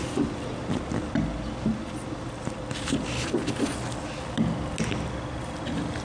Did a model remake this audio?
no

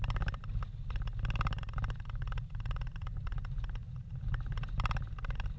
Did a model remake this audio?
no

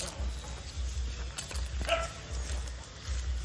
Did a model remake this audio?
no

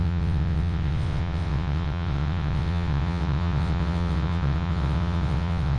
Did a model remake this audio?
yes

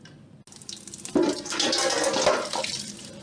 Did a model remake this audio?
no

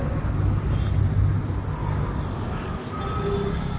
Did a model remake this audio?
no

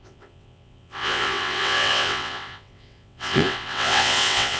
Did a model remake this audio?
yes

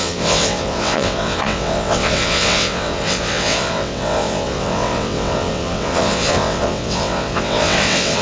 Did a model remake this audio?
yes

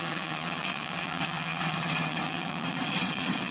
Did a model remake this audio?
yes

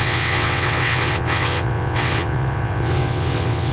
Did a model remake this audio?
yes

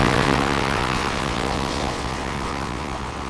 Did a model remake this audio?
yes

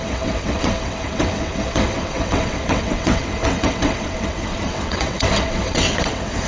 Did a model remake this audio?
yes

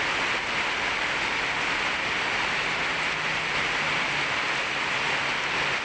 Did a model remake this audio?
no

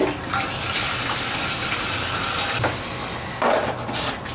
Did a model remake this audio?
no